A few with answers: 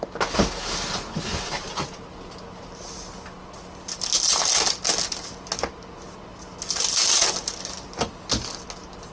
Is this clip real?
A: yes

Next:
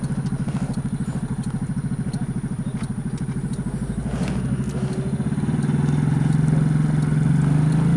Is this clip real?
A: yes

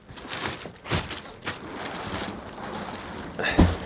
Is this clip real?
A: yes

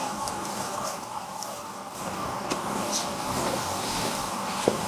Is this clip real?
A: no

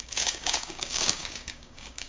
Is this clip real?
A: no